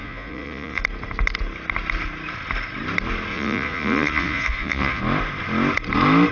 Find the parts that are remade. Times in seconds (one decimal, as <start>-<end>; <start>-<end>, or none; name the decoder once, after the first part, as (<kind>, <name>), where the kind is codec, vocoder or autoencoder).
0.0-0.8 (vocoder, Vocos); 3.3-5.0